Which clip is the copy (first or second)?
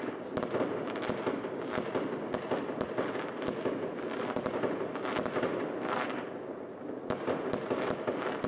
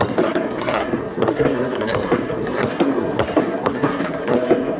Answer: second